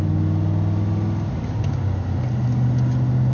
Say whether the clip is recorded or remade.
recorded